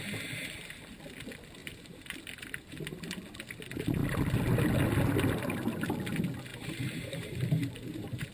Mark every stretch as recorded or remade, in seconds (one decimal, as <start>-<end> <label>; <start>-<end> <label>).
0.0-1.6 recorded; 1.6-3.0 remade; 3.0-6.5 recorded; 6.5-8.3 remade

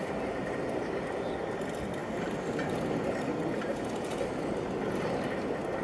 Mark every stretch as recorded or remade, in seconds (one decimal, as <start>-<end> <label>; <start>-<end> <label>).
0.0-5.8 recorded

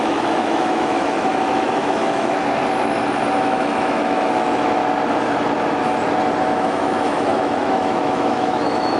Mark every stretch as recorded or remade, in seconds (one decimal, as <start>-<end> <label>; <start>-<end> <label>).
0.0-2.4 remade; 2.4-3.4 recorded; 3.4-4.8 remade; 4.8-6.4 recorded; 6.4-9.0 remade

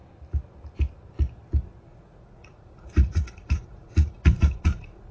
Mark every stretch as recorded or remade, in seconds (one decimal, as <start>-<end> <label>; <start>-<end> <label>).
0.0-1.9 recorded; 1.9-5.1 remade